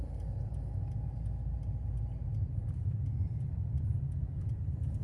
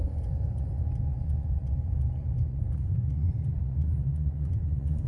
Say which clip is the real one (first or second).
first